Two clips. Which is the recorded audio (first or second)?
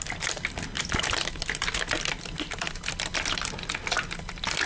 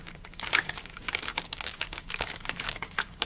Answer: first